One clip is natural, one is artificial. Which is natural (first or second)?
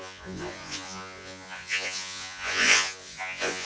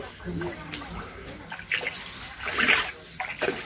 second